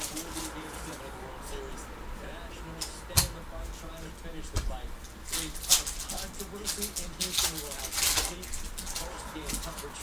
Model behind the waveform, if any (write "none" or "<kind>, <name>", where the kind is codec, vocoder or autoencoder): none